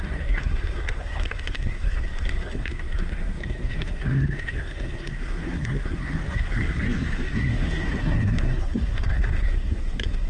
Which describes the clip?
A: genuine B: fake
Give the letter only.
B